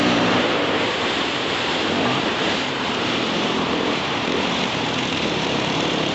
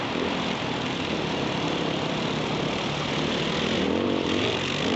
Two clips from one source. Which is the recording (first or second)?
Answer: second